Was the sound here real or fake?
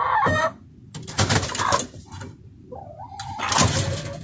real